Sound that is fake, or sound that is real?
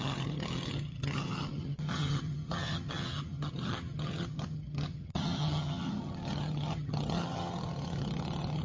fake